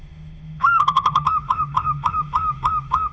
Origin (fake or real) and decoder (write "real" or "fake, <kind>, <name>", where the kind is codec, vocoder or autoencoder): fake, autoencoder, DAC-VAE